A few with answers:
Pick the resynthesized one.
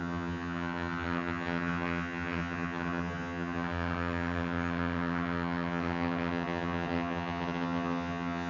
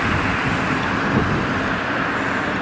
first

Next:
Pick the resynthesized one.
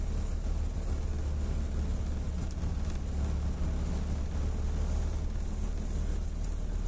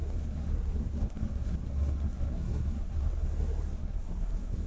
second